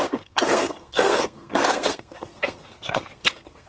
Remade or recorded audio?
remade